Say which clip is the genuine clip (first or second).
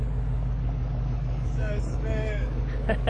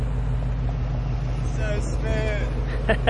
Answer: second